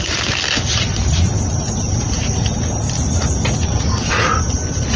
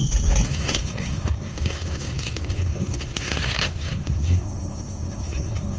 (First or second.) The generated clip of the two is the second